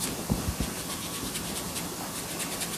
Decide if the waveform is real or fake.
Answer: real